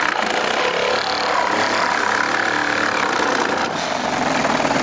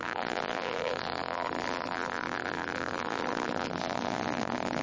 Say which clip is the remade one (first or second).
second